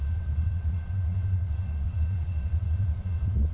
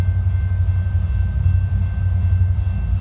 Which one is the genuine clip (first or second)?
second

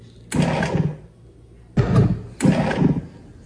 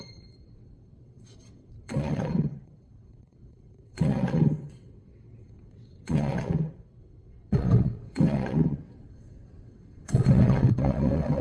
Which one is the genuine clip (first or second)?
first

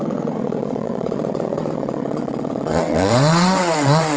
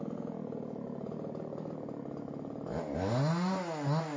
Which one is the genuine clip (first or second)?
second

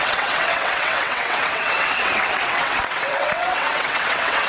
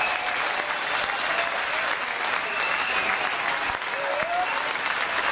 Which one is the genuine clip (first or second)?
second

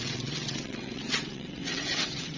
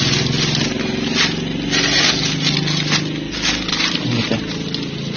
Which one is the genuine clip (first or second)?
second